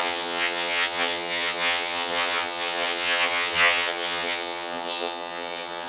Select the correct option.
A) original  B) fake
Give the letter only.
B